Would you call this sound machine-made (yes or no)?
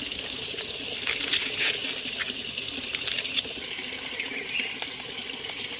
no